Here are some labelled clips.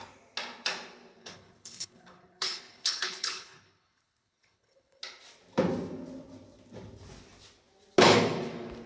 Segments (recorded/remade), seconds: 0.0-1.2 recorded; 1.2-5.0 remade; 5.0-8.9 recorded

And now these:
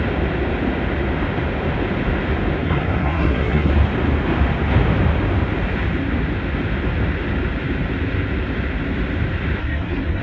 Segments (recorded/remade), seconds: 0.0-2.6 recorded; 2.6-3.7 remade; 3.7-9.6 recorded; 9.6-10.2 remade

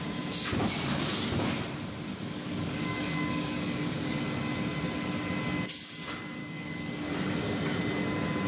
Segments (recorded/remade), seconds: 0.0-2.1 recorded; 2.1-4.2 remade; 4.2-6.4 recorded; 6.4-6.9 remade; 6.9-8.5 recorded

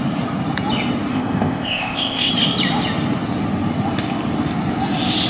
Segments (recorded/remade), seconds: 0.0-1.1 recorded; 1.1-2.3 remade; 2.3-5.3 recorded

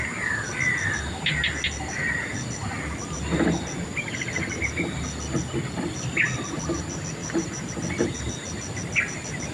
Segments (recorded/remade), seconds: 0.0-7.2 recorded; 7.2-7.7 remade; 7.7-9.5 recorded

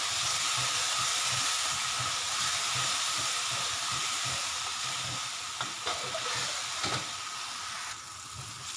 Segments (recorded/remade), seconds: 0.0-4.0 recorded; 4.0-7.6 remade; 7.6-8.8 recorded

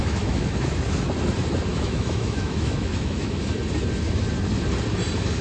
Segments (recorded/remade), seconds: 0.0-0.7 remade; 0.7-1.7 recorded; 1.7-3.4 remade; 3.4-5.4 recorded